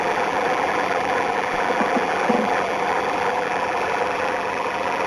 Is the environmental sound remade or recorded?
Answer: remade